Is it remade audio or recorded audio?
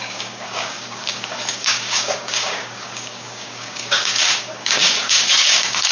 remade